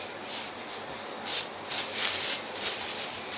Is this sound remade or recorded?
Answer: recorded